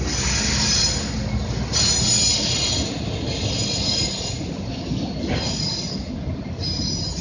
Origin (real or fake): real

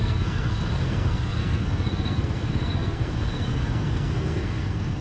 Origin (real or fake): fake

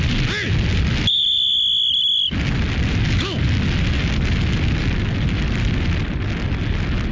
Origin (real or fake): real